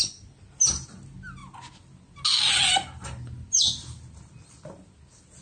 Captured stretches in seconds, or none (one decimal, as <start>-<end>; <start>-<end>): 0.0-5.4